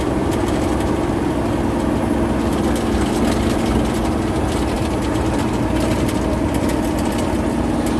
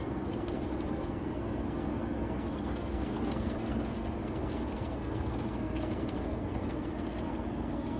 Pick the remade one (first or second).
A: second